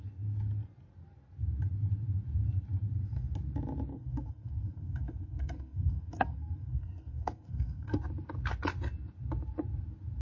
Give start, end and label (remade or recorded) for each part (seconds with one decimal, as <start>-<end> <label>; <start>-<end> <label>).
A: 0.0-3.9 recorded; 3.9-8.0 remade; 8.0-10.2 recorded